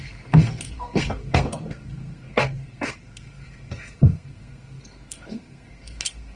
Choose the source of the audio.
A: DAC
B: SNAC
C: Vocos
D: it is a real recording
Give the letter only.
B